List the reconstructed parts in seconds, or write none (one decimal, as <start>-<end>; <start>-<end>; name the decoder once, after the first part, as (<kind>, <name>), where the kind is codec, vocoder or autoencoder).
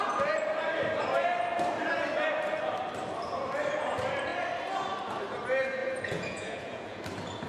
5.8-7.0 (vocoder, Vocos)